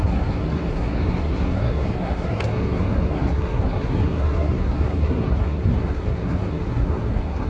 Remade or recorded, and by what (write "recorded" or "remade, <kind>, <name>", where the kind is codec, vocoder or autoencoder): remade, codec, SNAC